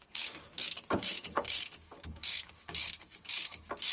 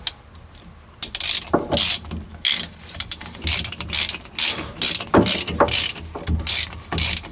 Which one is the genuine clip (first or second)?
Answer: second